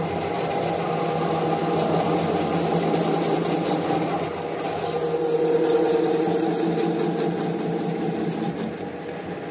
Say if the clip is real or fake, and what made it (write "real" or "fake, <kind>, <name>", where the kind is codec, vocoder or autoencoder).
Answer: real